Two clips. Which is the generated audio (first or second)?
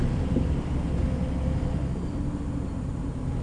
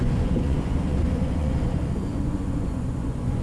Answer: second